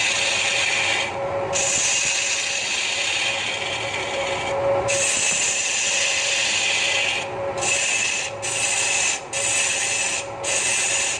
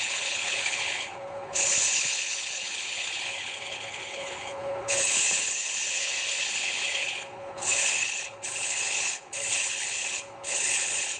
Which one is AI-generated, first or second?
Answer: second